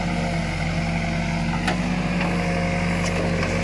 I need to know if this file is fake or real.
real